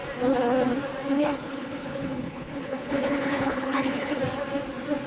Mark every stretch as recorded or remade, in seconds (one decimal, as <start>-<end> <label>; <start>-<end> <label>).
0.0-1.1 recorded; 1.1-4.2 remade; 4.2-5.1 recorded